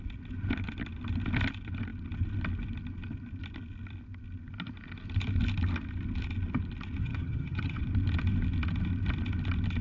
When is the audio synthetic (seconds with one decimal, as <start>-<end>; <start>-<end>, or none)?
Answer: 7.0-7.8